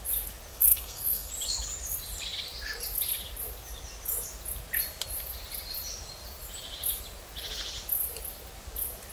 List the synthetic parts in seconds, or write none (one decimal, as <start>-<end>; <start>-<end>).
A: 0.5-1.3